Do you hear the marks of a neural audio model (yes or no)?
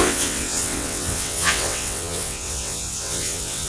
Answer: yes